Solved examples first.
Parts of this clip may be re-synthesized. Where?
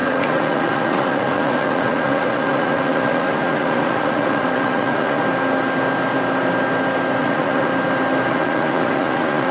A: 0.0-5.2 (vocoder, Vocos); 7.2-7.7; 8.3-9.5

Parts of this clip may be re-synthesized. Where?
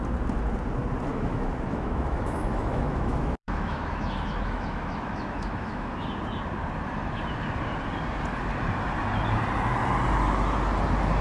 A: 1.1-6.0 (autoencoder, DAC-VAE)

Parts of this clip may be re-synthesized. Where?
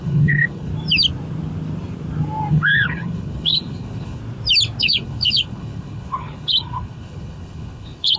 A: 0.0-0.7 (codec, HILCodec); 2.5-4.2; 4.8-8.2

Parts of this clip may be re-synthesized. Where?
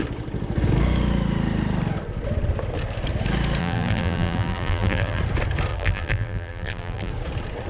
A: 3.6-5.2 (vocoder, BigVGAN v2); 5.7-7.1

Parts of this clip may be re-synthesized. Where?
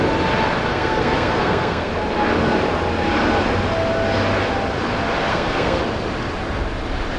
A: 0.7-1.9 (codec, SNAC); 5.3-5.8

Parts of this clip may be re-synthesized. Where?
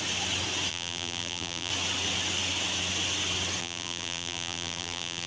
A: 0.7-1.7 (vocoder, BigVGAN v2); 3.6-5.3